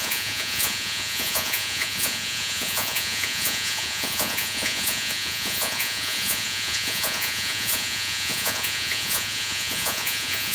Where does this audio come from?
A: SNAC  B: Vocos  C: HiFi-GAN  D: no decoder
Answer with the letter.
B